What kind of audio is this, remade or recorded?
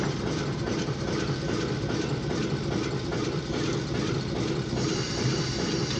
recorded